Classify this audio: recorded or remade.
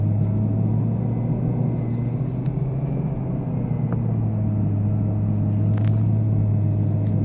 recorded